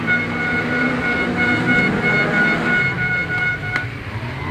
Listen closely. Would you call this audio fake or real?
real